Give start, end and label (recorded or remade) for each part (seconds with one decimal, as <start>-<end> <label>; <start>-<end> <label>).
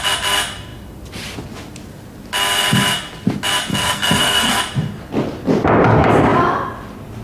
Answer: 0.0-3.7 recorded; 3.7-4.6 remade; 4.6-7.2 recorded